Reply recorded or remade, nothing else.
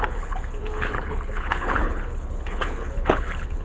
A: remade